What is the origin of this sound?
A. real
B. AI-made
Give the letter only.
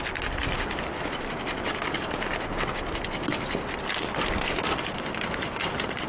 A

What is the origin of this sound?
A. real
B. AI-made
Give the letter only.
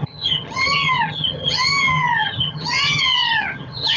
B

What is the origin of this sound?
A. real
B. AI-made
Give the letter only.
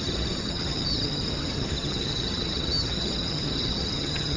B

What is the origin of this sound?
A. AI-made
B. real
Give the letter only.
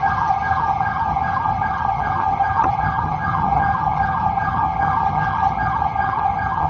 A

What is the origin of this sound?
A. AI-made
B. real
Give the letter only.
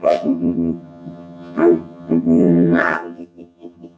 A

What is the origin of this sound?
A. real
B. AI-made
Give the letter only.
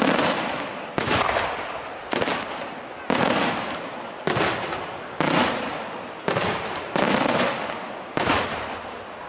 A